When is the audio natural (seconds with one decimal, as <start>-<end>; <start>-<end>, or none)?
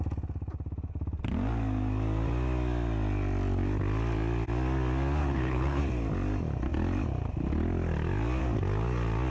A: 0.0-5.2; 5.8-9.3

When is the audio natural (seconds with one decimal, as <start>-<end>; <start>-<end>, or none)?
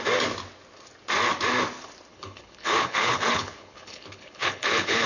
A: 0.0-2.1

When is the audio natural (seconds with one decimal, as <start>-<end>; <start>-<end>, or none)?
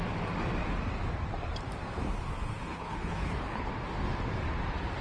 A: 0.0-2.7; 3.6-5.0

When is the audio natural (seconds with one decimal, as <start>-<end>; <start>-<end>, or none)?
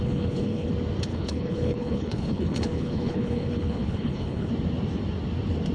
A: 0.7-1.1; 4.5-5.7